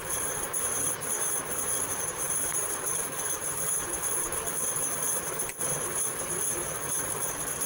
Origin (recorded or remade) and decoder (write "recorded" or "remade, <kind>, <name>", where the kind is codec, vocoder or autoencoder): remade, vocoder, BigVGAN v2